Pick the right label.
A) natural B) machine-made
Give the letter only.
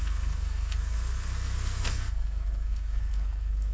B